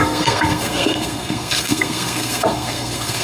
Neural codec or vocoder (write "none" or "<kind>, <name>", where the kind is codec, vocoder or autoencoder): codec, SNAC